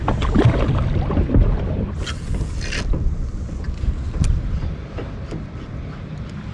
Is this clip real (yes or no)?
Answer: yes